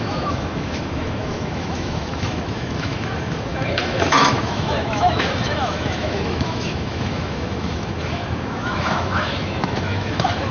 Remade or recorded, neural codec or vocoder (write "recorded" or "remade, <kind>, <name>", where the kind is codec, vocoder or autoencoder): remade, autoencoder, DAC-VAE